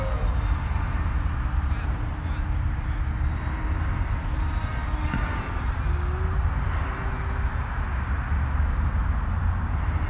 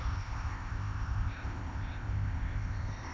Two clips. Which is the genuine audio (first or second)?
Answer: first